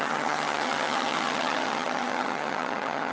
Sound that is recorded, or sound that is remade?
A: remade